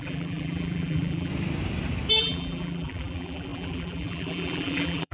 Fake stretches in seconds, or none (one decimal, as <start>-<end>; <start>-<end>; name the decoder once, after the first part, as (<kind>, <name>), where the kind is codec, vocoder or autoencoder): 0.0-1.3 (vocoder, BigVGAN v2); 2.1-5.1